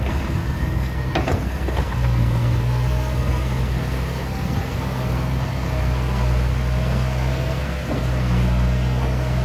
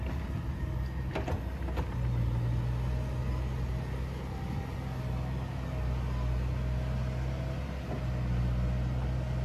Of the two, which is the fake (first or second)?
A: first